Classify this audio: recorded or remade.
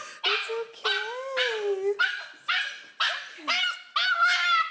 recorded